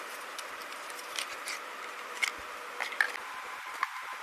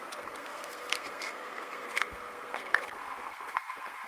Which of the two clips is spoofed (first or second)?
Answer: second